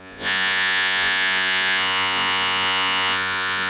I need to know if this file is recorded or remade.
remade